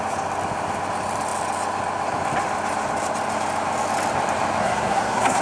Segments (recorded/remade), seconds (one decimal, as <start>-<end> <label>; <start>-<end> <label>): 0.0-4.6 recorded; 4.6-5.4 remade